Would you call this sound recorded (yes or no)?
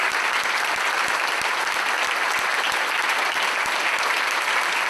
no